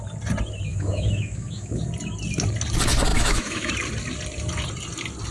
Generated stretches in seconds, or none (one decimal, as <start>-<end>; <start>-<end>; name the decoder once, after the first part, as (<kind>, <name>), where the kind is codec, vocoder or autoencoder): 0.7-1.8 (autoencoder, DAC-VAE); 3.1-3.7